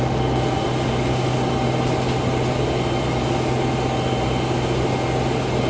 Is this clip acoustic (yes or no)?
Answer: yes